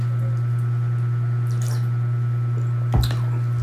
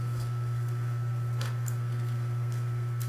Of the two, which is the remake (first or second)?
second